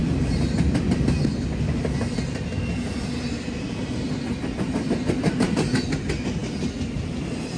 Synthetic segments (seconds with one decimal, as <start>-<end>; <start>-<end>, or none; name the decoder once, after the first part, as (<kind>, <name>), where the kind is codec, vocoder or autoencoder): none